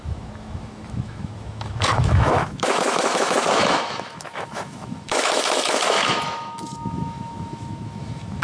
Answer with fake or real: fake